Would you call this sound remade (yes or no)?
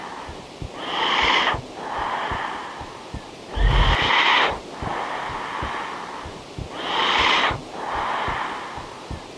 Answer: no